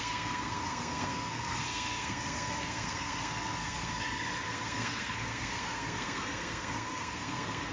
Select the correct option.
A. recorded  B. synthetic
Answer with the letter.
B